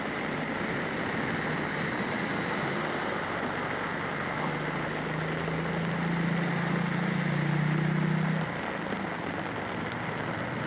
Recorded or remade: recorded